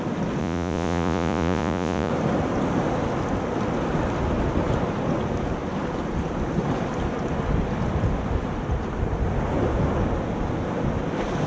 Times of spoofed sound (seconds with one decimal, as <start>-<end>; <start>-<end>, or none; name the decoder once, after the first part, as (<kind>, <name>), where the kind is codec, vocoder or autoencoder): 0.4-2.1 (vocoder, Vocos)